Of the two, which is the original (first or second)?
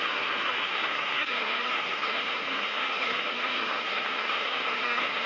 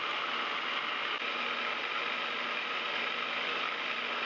second